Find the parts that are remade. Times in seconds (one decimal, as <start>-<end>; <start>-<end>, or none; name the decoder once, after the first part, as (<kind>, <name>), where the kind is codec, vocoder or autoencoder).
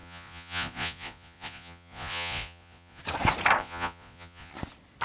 0.0-3.0 (vocoder, Vocos); 3.6-4.5